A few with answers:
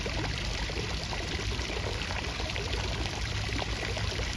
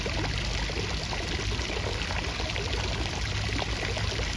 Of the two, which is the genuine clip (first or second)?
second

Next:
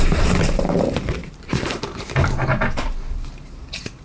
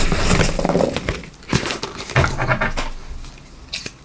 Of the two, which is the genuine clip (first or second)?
second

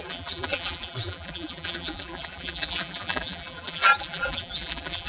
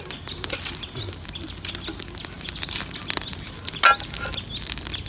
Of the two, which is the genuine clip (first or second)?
second